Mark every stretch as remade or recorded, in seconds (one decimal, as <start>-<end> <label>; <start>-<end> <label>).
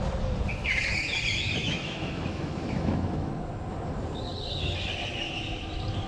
0.0-1.6 recorded; 1.6-3.3 remade; 3.3-6.1 recorded